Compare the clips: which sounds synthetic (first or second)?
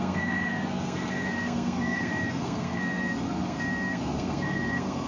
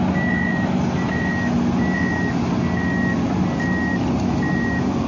first